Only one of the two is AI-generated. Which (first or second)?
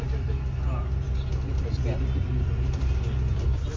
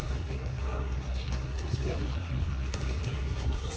second